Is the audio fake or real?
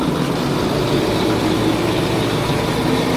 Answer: real